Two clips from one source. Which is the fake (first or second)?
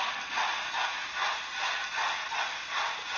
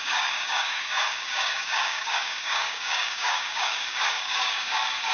second